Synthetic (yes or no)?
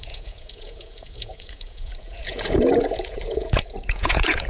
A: yes